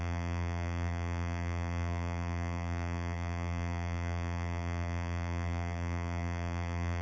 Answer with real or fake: fake